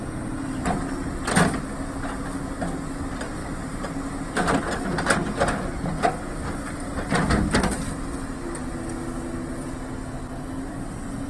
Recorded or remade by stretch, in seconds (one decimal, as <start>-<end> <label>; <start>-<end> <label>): 0.0-3.4 recorded; 3.4-4.6 remade; 4.6-6.3 recorded; 6.3-7.1 remade; 7.1-11.3 recorded